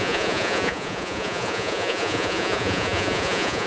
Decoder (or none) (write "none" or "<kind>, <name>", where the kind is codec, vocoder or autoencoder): vocoder, Vocos